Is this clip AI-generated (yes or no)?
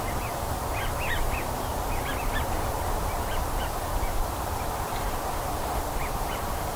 yes